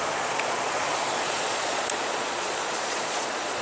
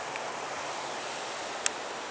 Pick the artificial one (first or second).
first